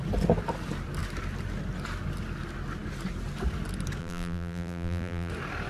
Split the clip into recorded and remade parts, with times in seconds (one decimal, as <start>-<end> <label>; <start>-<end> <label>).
0.0-4.0 recorded; 4.0-5.3 remade; 5.3-5.7 recorded